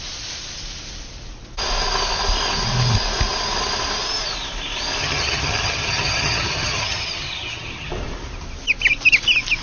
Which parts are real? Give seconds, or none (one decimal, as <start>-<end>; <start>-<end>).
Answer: 0.0-5.0; 7.9-9.6